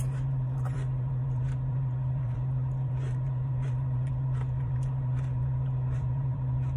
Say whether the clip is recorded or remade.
remade